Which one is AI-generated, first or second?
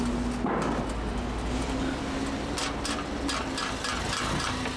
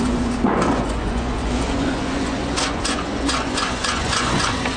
second